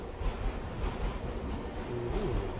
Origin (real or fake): real